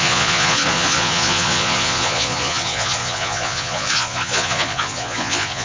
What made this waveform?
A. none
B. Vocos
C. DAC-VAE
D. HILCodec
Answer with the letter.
B